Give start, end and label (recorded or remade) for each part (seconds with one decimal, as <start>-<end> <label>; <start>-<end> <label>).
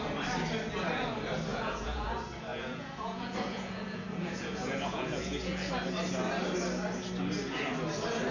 0.0-1.5 recorded; 1.5-2.1 remade; 2.1-2.5 recorded; 2.5-5.7 remade; 5.7-8.3 recorded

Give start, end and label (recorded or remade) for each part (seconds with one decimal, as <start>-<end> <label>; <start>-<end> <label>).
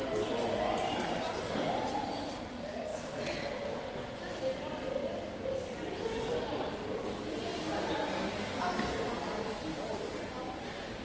0.0-2.9 remade; 2.9-6.7 recorded; 6.7-7.5 remade; 7.5-8.9 recorded; 8.9-11.0 remade